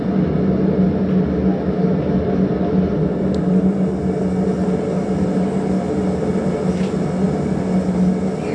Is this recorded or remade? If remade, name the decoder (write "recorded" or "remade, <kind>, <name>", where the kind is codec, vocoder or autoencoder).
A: recorded